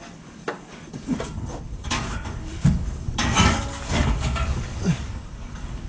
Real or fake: fake